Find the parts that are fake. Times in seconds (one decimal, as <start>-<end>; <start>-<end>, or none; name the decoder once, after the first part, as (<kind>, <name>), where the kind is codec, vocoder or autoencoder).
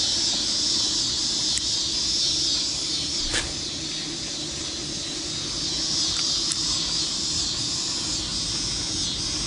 none